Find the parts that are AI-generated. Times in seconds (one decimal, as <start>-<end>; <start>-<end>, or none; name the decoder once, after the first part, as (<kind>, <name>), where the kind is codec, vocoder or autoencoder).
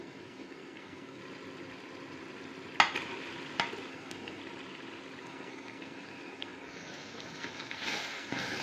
0.0-1.2 (codec, SNAC); 3.9-4.4; 5.2-8.6